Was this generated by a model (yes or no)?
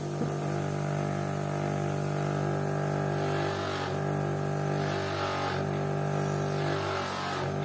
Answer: no